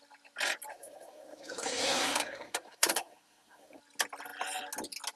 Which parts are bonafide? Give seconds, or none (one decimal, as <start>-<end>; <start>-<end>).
0.0-0.7; 3.8-5.2